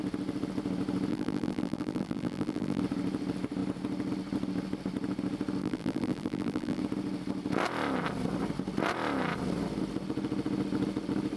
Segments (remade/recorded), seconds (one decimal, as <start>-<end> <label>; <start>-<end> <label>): 0.0-1.1 recorded; 1.1-2.8 remade; 2.8-5.6 recorded; 5.6-6.8 remade; 6.8-11.4 recorded